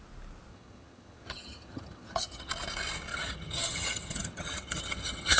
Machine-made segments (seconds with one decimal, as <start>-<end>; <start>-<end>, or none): 0.5-2.5; 3.1-5.4